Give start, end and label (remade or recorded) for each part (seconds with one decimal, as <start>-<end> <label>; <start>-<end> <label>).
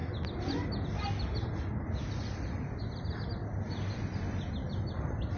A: 0.0-1.6 recorded; 1.6-5.4 remade